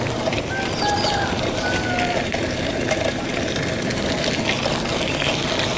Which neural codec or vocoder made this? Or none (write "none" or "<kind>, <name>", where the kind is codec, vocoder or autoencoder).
none